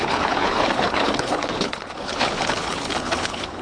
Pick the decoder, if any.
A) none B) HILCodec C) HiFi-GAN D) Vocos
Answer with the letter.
B